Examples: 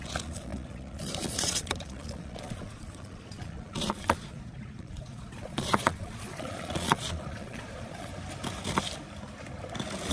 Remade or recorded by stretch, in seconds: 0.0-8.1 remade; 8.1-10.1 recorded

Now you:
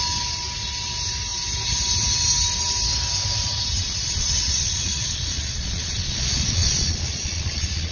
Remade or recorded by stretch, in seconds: 0.0-3.8 recorded; 3.8-7.9 remade

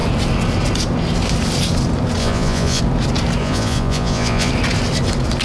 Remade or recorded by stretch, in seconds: 0.0-2.2 recorded; 2.2-2.8 remade; 2.8-3.4 recorded; 3.4-4.5 remade; 4.5-5.4 recorded

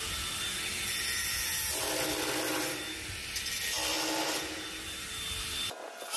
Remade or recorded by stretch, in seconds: 0.0-6.2 recorded

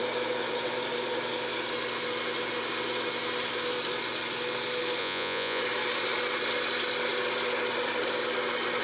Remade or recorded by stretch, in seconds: 0.0-5.0 recorded; 5.0-5.6 remade; 5.6-8.8 recorded

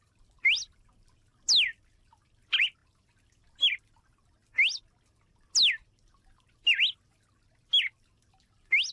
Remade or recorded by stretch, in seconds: 0.0-8.9 recorded

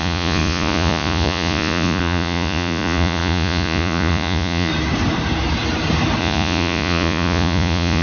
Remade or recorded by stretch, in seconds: 0.0-4.7 remade; 4.7-6.2 recorded; 6.2-8.0 remade

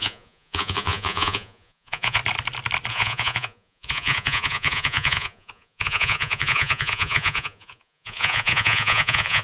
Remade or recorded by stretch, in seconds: 0.0-2.2 remade; 2.2-2.9 recorded; 2.9-9.4 remade